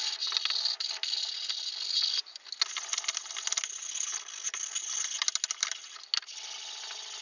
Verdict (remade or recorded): recorded